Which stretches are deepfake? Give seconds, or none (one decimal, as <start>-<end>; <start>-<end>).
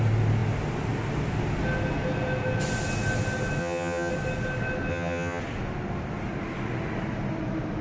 3.6-4.1; 4.9-5.4